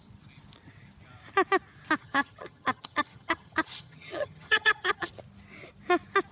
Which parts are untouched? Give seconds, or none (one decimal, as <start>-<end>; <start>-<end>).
0.0-2.0; 5.1-6.3